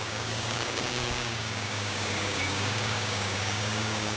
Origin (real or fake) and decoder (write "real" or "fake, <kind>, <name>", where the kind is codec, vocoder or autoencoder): fake, codec, DAC